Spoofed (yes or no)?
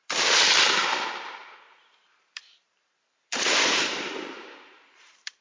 yes